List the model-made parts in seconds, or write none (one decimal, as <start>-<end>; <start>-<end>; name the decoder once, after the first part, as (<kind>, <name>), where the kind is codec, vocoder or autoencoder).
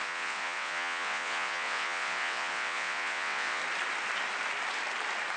0.0-3.6 (vocoder, WaveNeXt)